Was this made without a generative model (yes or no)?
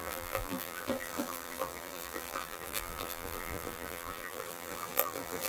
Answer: no